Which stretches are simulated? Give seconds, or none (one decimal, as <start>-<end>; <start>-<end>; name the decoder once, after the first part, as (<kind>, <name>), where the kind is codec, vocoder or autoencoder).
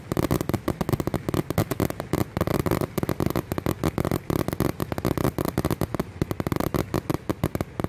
none